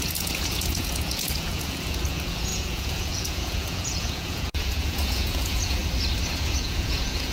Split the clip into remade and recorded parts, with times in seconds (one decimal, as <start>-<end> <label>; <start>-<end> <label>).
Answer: 0.0-5.8 remade; 5.8-6.6 recorded; 6.6-7.3 remade